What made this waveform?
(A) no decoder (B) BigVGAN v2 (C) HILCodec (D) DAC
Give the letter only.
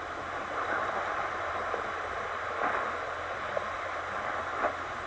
B